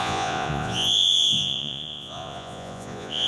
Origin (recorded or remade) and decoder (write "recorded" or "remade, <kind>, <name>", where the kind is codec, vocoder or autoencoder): remade, vocoder, Vocos